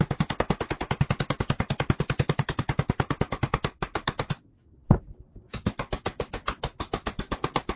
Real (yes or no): yes